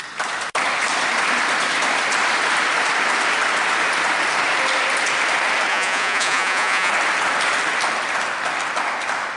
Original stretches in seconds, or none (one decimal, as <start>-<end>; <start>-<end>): 0.0-5.7; 6.9-9.4